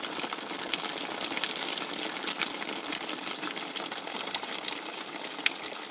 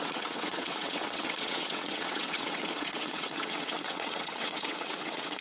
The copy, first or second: second